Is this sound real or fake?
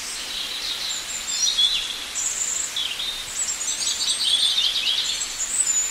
real